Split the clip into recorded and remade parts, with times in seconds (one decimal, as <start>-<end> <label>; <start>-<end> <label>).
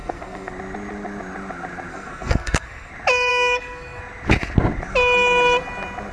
0.0-0.5 remade; 0.5-1.9 recorded; 1.9-2.9 remade; 2.9-3.3 recorded; 3.3-4.0 remade; 4.0-6.1 recorded